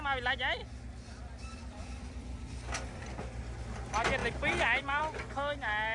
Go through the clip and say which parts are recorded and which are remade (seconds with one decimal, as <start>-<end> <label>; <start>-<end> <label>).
0.0-0.6 recorded; 0.6-3.0 remade; 3.0-4.2 recorded; 4.2-5.0 remade; 5.0-5.9 recorded